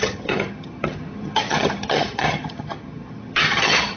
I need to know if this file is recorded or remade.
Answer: remade